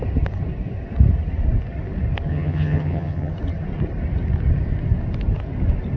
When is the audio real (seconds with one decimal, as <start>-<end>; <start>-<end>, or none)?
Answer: 0.0-2.3; 3.3-6.0